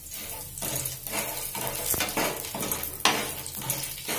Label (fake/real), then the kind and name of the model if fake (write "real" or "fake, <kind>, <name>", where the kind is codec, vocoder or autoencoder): real